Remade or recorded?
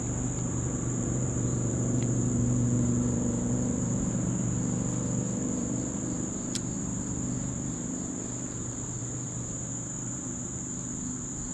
remade